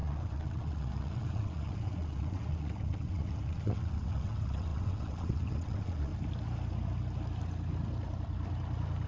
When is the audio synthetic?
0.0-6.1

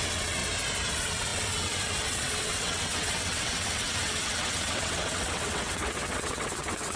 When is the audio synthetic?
0.0-0.4; 0.9-7.0

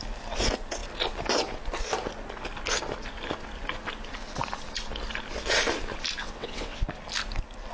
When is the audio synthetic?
6.2-6.8

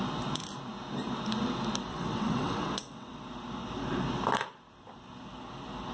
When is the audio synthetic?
1.9-3.2

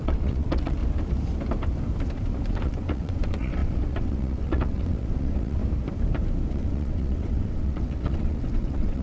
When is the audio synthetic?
0.0-0.8; 2.5-5.6; 6.5-9.0

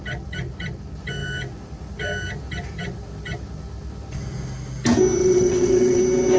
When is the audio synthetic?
5.2-6.0